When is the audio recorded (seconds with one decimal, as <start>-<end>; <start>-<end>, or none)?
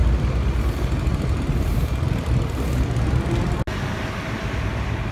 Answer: 0.0-5.1